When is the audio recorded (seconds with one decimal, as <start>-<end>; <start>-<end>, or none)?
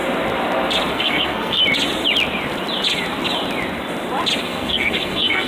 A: 0.0-0.9; 1.6-4.4